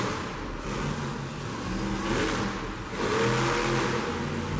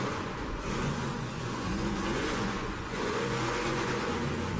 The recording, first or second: first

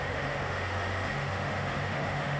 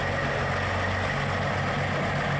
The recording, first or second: second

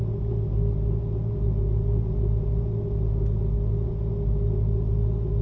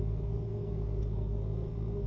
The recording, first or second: first